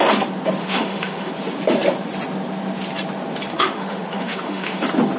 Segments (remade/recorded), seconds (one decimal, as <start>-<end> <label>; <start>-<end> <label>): 0.0-0.6 recorded; 0.6-1.3 remade; 1.3-3.5 recorded; 3.5-4.8 remade; 4.8-5.2 recorded